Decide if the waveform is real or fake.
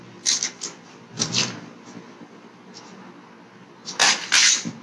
real